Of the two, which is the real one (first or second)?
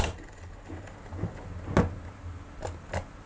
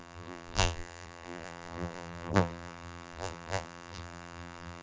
first